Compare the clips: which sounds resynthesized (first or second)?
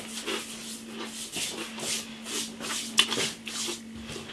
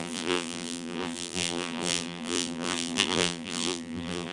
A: second